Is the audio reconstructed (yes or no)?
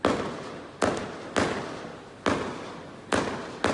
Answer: no